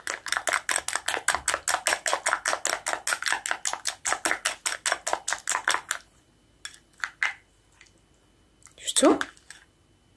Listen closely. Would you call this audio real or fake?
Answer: real